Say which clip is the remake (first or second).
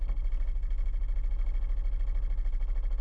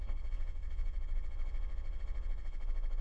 second